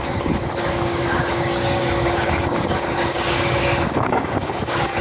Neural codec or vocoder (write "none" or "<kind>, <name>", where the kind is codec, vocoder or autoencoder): codec, DAC